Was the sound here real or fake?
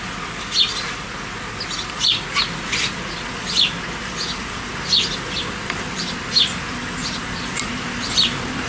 real